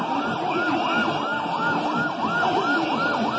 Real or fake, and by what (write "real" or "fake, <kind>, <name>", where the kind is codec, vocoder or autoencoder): real